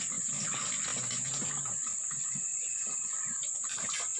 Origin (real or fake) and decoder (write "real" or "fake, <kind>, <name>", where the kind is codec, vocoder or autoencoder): real